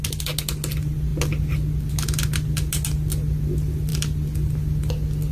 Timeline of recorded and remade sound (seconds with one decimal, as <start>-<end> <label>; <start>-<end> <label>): 0.0-5.3 recorded

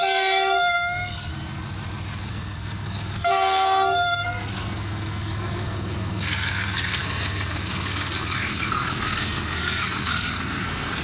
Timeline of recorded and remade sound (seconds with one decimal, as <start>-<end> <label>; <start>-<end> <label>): 0.0-1.3 remade; 1.3-2.3 recorded; 2.3-11.0 remade

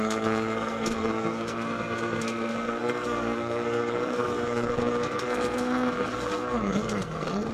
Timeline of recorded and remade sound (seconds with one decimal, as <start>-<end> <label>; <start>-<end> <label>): 0.0-7.5 remade

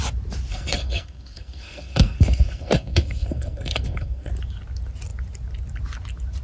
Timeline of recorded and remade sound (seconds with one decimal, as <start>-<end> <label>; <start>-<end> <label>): 0.0-0.5 recorded; 0.5-4.3 remade; 4.3-6.4 recorded

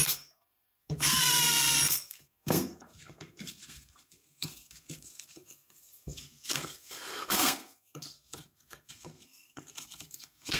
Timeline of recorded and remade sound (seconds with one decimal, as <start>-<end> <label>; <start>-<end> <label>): 0.0-10.6 remade

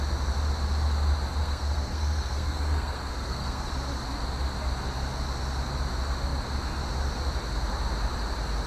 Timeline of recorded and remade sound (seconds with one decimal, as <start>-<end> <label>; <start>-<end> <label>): 0.0-1.4 recorded; 1.4-3.7 remade; 3.7-8.7 recorded

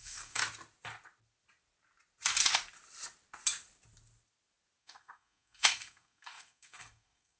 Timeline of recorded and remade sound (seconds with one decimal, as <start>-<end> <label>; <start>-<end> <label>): 0.0-0.4 remade; 0.4-4.8 recorded; 4.8-7.4 remade